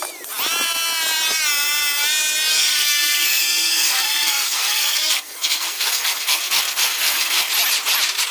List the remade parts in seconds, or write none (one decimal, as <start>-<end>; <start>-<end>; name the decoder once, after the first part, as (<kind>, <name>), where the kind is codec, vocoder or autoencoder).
2.5-7.5 (codec, SNAC)